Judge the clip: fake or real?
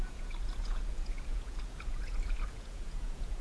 fake